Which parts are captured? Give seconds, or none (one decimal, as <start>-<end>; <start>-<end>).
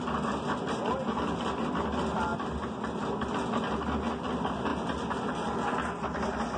0.0-6.6